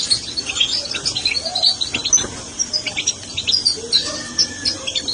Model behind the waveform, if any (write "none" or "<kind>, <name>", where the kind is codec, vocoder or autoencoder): none